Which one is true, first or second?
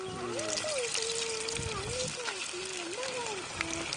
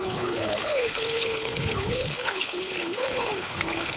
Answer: first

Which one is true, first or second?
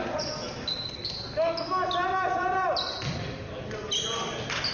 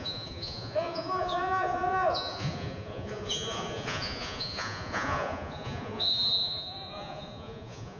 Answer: first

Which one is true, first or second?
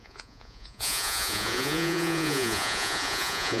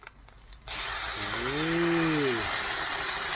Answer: second